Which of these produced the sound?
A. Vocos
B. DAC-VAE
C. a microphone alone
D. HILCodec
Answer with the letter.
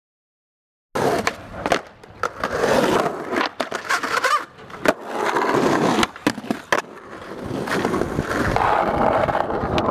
C